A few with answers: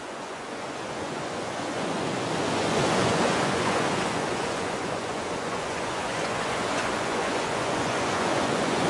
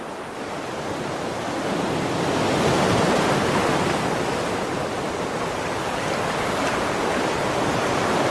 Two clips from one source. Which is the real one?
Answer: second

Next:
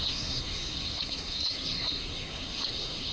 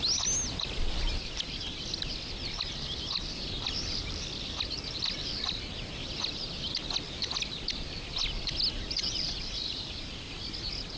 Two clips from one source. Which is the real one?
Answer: second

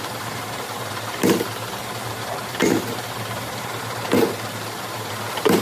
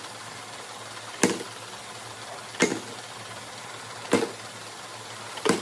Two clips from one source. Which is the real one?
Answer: second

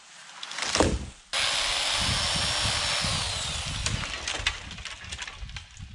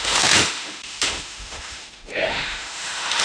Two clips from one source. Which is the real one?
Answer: first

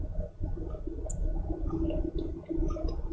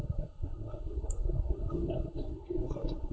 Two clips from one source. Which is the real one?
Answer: first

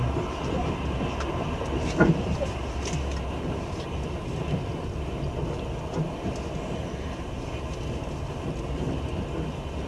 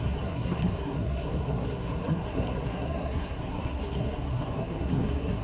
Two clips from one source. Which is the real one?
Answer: first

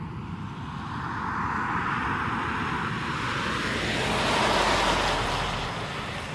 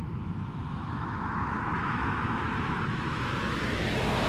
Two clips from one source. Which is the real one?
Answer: first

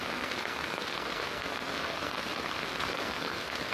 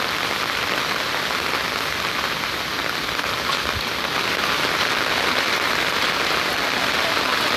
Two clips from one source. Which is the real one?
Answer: second